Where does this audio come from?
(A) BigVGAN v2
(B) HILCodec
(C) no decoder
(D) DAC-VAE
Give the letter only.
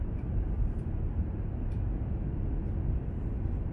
C